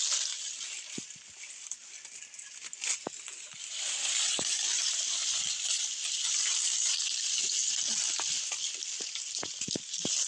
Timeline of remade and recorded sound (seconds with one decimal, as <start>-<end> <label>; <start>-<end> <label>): 0.0-10.3 recorded